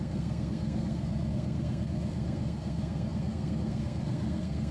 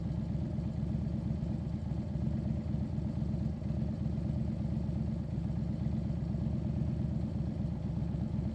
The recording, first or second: second